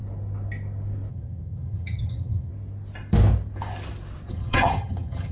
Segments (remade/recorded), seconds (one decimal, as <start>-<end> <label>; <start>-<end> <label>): 0.0-1.1 recorded; 1.1-2.5 remade; 2.5-4.3 recorded; 4.3-5.3 remade